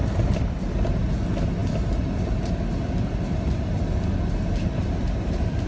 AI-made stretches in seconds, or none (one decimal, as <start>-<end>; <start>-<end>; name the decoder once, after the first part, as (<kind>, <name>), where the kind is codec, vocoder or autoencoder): none